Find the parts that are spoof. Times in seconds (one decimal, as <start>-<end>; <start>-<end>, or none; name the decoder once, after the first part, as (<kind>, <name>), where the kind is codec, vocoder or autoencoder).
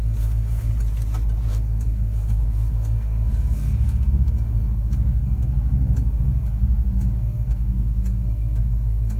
0.0-0.7 (codec, SNAC); 1.5-9.2